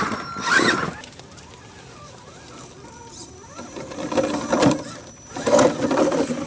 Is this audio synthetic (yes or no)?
no